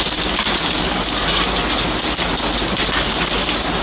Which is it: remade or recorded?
recorded